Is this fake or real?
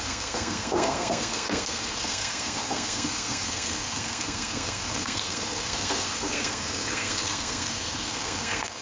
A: fake